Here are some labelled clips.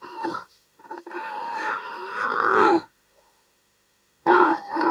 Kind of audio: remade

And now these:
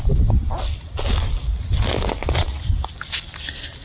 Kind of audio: recorded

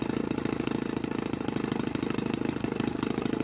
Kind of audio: recorded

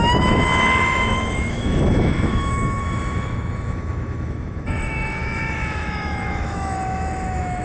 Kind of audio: remade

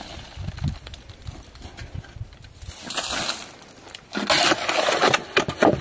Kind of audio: recorded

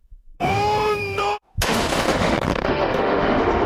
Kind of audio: remade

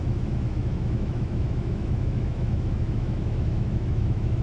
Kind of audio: remade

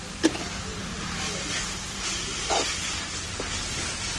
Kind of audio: recorded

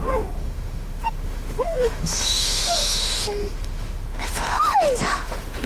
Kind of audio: remade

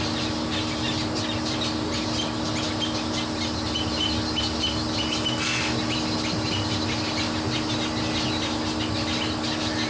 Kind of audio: recorded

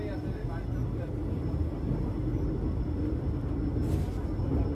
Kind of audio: recorded